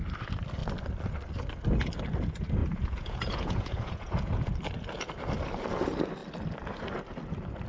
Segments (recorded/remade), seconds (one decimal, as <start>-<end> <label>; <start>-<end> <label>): 0.0-2.6 recorded; 2.6-4.5 remade; 4.5-7.7 recorded